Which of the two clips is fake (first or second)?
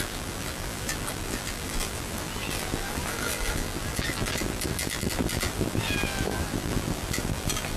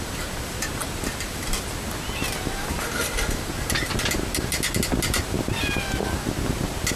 first